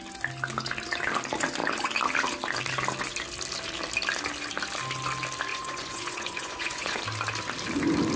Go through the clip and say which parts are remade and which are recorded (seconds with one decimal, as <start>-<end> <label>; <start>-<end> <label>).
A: 0.0-5.5 recorded; 5.5-7.0 remade; 7.0-8.2 recorded